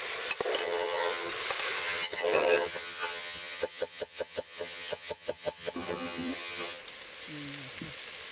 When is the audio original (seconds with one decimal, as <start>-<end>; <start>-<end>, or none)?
0.0-0.6; 1.3-1.8; 6.8-8.3